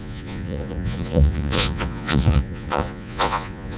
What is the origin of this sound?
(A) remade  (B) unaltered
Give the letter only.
A